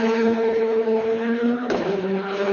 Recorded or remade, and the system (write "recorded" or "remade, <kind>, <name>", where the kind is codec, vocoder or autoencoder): remade, codec, HILCodec